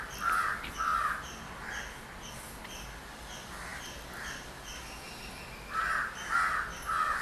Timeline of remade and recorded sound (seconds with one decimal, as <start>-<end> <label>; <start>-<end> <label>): 0.0-7.2 recorded